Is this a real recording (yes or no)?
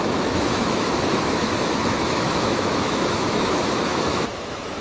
no